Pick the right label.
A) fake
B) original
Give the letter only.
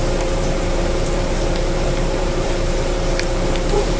A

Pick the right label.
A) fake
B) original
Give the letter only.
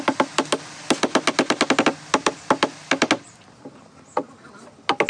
B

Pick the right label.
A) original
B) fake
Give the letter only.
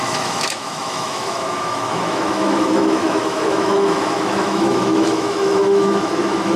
B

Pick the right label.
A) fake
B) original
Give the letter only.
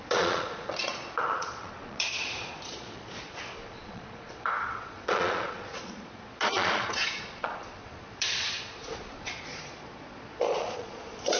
A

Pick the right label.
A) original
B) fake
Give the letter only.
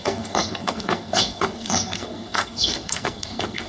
B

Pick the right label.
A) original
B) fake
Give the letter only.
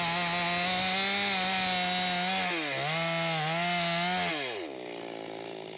A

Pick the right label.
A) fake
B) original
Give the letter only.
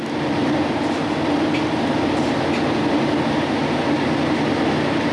B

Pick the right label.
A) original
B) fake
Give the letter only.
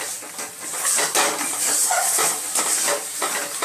A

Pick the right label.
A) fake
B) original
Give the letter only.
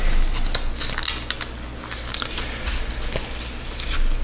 B